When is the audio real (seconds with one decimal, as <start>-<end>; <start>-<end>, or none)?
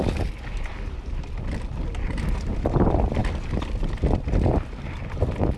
0.0-5.6